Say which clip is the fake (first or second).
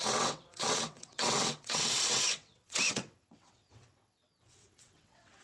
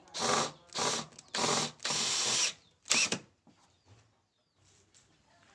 first